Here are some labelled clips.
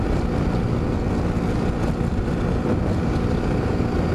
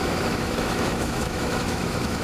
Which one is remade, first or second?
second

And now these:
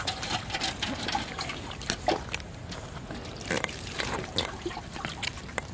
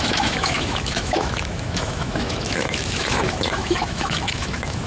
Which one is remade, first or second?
second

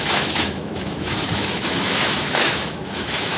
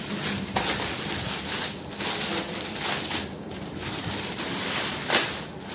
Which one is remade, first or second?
first